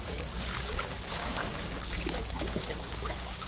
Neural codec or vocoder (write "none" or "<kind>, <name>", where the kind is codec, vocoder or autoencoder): codec, DAC